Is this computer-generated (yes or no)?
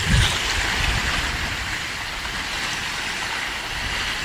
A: no